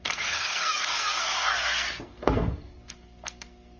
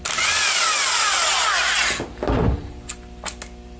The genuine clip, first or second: second